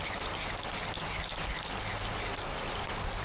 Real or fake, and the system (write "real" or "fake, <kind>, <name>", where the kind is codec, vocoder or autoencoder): real